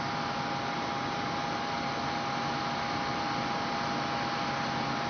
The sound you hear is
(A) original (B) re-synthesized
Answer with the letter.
A